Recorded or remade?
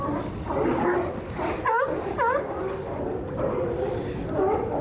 recorded